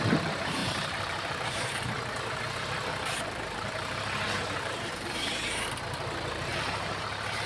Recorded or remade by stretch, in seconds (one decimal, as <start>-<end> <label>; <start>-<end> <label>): 0.0-7.5 remade